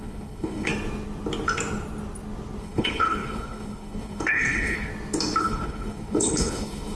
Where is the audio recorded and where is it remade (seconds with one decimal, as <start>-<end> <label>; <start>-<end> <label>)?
0.0-0.7 remade; 0.7-2.6 recorded; 2.6-4.9 remade; 4.9-5.4 recorded; 5.4-6.9 remade